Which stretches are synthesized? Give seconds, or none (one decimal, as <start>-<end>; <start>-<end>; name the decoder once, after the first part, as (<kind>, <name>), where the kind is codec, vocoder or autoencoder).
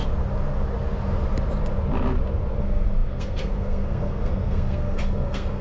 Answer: 2.6-5.6 (codec, SNAC)